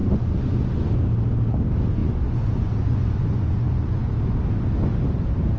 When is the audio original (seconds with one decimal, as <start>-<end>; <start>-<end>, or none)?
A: 0.9-2.0; 4.1-5.6